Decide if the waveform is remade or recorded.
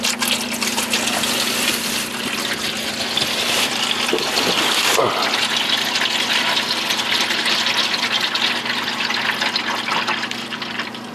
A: recorded